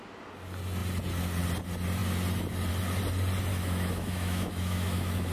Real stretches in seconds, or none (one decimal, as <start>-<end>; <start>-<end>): 0.0-3.5